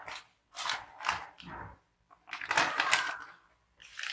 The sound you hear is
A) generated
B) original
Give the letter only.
B